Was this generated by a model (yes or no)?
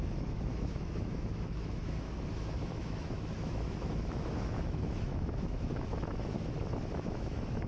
yes